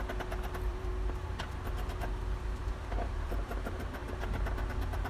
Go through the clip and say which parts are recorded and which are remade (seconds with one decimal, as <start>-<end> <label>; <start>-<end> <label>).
0.0-0.7 recorded; 0.7-1.3 remade; 1.3-2.6 recorded; 2.6-3.3 remade; 3.3-5.1 recorded